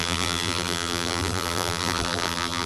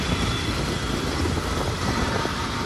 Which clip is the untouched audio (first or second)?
second